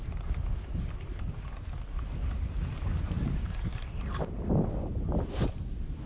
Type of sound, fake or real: real